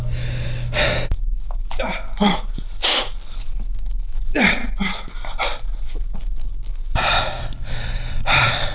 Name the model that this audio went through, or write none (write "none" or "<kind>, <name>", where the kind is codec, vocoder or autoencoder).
none